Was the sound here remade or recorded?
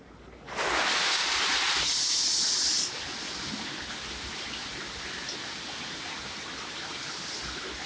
recorded